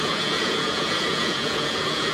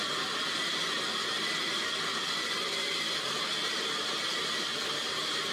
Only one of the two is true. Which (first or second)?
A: second